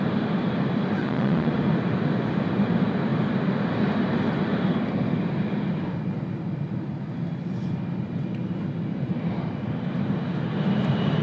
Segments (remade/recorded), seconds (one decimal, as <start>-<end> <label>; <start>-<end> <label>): 0.0-1.0 recorded; 1.0-1.5 remade; 1.5-11.2 recorded